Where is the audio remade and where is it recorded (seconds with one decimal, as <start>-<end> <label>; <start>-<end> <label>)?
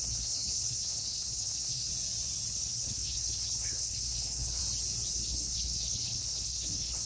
0.0-1.9 remade; 1.9-2.5 recorded; 2.5-4.6 remade; 4.6-5.1 recorded; 5.1-7.1 remade